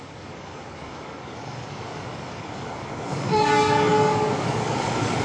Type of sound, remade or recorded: remade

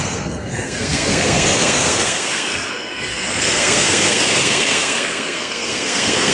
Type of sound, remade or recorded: remade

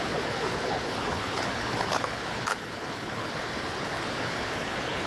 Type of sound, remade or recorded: remade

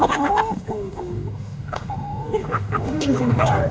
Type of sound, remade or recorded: remade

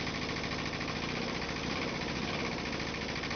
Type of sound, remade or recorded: recorded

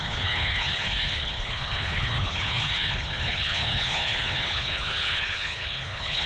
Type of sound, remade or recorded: remade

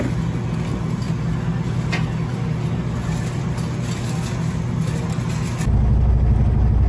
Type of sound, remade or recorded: recorded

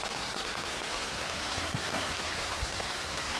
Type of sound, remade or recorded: remade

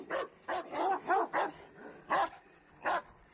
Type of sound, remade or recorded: recorded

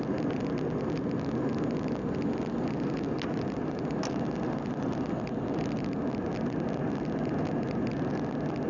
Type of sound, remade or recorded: recorded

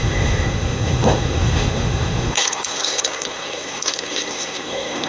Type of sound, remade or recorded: remade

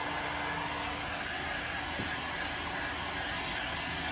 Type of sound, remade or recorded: recorded